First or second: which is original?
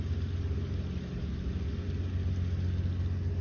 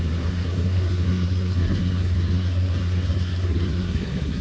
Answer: first